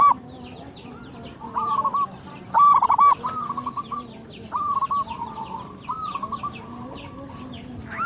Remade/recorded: recorded